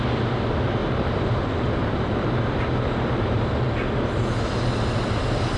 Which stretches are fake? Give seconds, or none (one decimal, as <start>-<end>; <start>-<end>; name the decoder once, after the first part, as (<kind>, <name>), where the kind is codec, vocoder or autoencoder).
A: 0.8-3.6 (vocoder, BigVGAN v2)